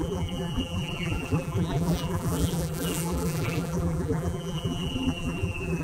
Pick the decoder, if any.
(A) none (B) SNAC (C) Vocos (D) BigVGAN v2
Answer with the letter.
D